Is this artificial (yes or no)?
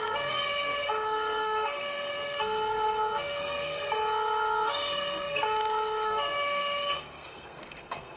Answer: yes